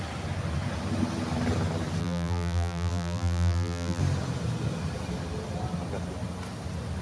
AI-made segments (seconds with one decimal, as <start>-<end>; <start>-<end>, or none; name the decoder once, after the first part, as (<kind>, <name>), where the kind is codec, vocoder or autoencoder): 2.0-4.0 (vocoder, BigVGAN v2)